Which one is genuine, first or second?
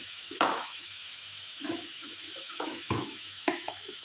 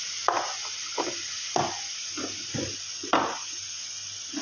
second